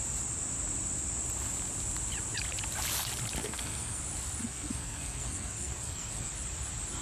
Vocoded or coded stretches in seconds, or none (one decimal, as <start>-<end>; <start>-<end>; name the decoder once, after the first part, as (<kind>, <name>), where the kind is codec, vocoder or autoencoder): 3.4-4.0 (codec, SNAC); 4.4-6.3